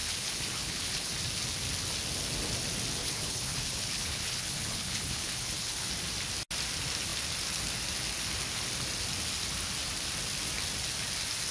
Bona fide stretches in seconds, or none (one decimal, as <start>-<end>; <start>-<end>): 1.1-3.0; 5.9-11.5